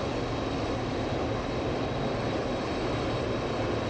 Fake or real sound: real